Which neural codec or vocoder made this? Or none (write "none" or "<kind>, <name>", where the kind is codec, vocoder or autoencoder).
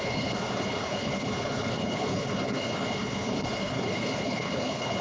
codec, HILCodec